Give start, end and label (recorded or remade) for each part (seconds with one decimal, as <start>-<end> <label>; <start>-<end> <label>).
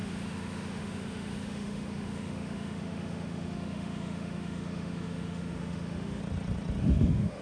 0.0-6.2 remade; 6.2-6.8 recorded; 6.8-7.4 remade